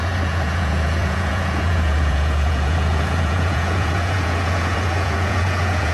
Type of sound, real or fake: fake